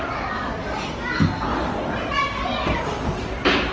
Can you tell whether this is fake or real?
real